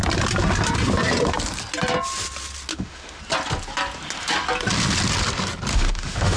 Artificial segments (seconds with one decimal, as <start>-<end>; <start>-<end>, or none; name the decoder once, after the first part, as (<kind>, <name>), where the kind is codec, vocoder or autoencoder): 2.7-3.2 (autoencoder, DAC-VAE); 5.7-6.4